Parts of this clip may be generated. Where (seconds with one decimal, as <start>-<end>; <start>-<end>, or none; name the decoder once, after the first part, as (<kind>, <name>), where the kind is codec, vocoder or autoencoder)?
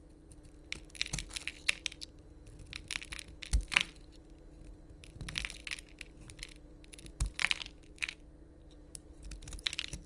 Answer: none